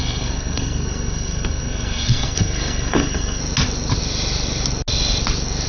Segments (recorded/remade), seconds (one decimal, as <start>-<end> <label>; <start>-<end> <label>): 0.0-3.4 remade; 3.4-5.7 recorded